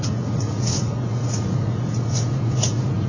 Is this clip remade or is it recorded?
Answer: remade